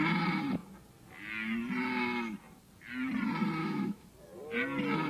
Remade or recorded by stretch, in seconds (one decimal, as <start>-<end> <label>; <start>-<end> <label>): 0.0-3.6 recorded; 3.6-4.1 remade; 4.1-5.1 recorded

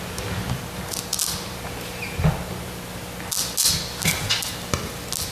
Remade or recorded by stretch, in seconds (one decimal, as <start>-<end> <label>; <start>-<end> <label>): 0.0-5.3 recorded

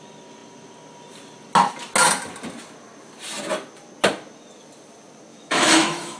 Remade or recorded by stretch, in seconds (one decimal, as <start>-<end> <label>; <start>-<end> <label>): 0.0-5.3 recorded; 5.3-6.2 remade

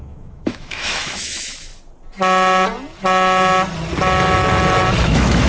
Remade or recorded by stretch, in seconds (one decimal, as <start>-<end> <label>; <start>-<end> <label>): 0.0-1.7 remade; 1.7-5.0 recorded; 5.0-5.5 remade

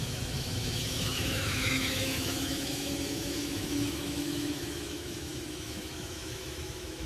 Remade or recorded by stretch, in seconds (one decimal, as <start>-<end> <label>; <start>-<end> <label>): 0.0-7.1 remade